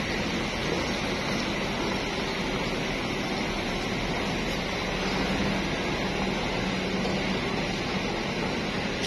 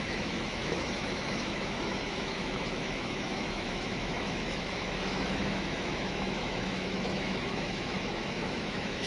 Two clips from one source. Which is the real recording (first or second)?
first